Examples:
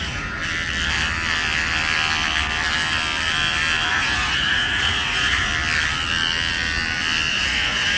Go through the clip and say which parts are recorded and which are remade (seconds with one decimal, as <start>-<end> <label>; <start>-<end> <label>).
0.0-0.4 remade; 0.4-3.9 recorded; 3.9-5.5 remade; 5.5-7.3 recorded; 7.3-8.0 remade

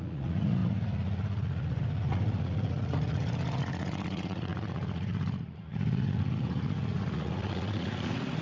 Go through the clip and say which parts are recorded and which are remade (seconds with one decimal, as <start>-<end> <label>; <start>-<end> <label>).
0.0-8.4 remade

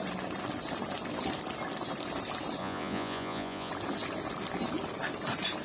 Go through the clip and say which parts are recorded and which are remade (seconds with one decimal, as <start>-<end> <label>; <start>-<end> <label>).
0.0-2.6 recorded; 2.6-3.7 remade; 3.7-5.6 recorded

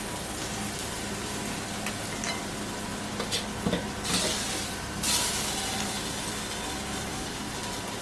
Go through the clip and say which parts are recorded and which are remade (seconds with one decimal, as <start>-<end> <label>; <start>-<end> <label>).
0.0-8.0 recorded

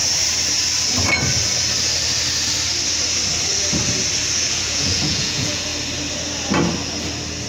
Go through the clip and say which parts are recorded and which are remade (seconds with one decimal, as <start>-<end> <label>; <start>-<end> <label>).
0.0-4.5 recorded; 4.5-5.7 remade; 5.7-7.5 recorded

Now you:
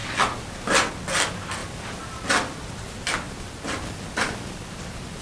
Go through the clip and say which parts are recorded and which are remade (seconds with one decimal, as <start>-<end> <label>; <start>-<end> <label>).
0.0-5.2 recorded

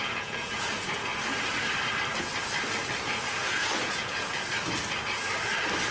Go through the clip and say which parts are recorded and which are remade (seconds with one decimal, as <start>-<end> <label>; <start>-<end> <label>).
0.0-1.1 remade; 1.1-3.0 recorded; 3.0-4.3 remade; 4.3-5.9 recorded

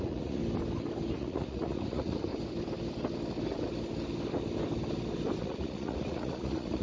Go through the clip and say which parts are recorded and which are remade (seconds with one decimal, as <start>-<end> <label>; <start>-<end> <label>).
0.0-0.4 remade; 0.4-1.1 recorded; 1.1-2.3 remade; 2.3-5.4 recorded; 5.4-6.8 remade